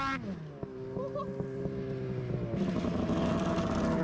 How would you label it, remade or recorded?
recorded